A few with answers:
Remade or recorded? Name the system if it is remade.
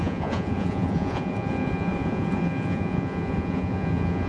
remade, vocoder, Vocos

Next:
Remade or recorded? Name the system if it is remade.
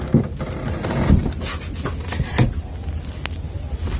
recorded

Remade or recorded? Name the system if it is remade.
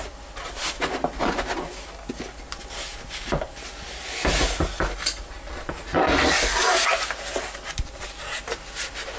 recorded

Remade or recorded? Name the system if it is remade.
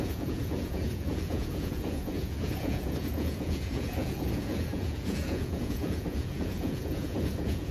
remade, vocoder, Vocos